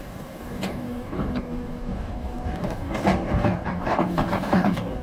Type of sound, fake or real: fake